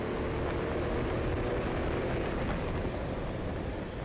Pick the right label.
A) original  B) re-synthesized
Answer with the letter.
A